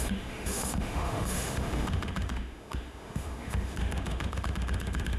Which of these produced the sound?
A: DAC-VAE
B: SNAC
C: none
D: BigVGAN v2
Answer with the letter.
A